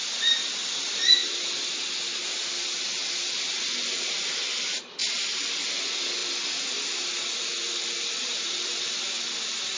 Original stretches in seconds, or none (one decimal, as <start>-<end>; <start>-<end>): 0.0-6.2; 8.9-9.8